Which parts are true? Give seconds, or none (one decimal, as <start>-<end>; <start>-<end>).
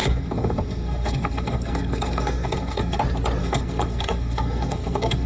3.0-3.4